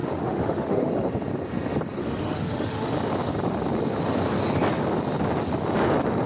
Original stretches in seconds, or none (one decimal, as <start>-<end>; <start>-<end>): 0.9-2.0; 2.9-6.3